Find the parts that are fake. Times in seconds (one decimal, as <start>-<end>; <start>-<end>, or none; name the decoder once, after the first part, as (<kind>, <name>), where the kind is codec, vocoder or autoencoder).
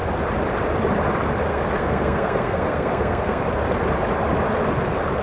1.5-3.4 (codec, SNAC)